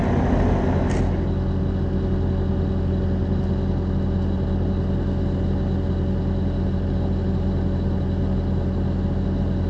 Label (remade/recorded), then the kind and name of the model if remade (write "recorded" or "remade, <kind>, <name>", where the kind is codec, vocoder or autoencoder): recorded